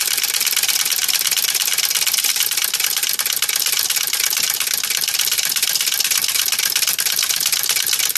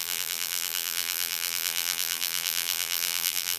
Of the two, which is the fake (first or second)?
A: second